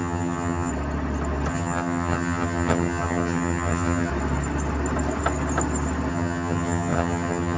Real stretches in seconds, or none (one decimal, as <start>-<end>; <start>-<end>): 0.7-1.5; 4.1-6.1

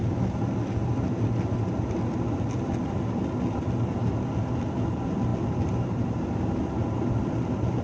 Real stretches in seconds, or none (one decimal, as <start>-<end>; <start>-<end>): 0.0-7.8

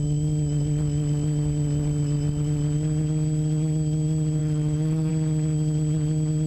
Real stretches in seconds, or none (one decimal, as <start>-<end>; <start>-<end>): 0.0-4.4; 5.1-6.5

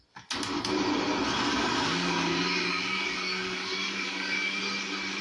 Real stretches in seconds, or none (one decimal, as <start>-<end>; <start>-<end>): 0.0-1.5; 4.6-5.2

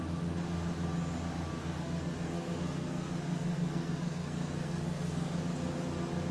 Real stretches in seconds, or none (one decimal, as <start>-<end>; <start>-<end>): 0.0-1.6; 5.4-6.3